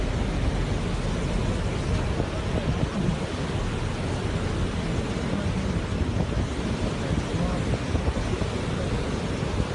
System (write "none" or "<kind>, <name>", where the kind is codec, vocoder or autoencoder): none